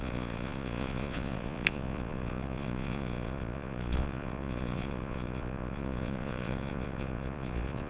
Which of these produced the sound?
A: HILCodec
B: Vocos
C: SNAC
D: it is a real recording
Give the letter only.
B